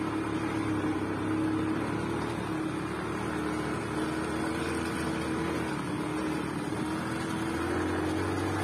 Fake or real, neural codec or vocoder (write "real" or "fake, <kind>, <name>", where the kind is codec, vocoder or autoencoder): real